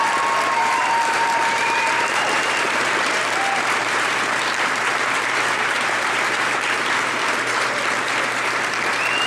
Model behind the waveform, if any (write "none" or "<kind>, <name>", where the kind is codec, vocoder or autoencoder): vocoder, BigVGAN v2